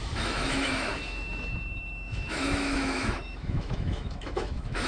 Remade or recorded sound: remade